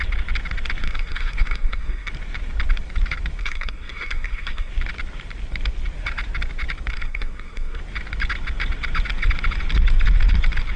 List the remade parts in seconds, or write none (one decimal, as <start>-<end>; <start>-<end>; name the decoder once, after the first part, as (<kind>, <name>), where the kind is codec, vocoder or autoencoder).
0.8-2.1 (codec, SNAC); 3.4-4.7; 6.9-7.8